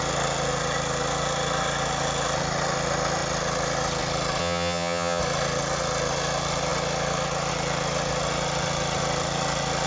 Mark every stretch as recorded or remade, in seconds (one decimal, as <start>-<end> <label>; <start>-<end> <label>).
0.0-4.4 recorded; 4.4-5.2 remade; 5.2-9.9 recorded